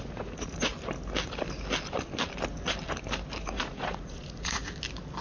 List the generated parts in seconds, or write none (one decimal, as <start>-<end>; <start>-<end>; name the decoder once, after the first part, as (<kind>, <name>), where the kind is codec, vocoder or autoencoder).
0.0-0.7 (vocoder, Vocos); 3.4-4.6